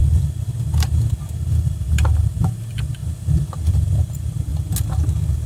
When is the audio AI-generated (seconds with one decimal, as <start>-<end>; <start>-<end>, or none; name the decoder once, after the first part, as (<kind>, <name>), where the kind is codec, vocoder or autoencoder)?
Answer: 0.0-3.0 (vocoder, BigVGAN v2); 3.7-4.5